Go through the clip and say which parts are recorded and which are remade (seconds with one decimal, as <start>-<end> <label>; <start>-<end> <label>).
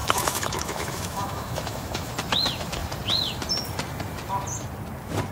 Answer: 0.0-2.1 remade; 2.1-5.3 recorded